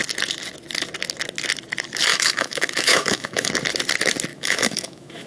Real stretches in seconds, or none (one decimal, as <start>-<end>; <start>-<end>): 0.0-2.1; 3.5-4.3